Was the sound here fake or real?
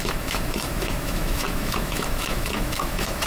fake